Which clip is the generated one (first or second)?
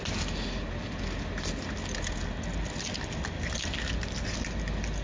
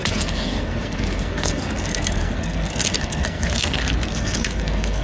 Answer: second